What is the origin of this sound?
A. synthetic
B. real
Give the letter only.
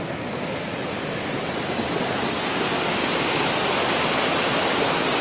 B